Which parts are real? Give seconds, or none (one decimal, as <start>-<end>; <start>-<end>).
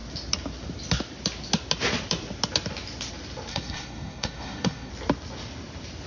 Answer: 0.0-3.5; 4.9-6.1